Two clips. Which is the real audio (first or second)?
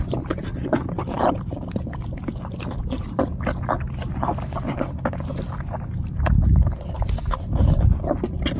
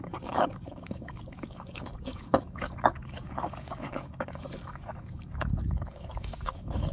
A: first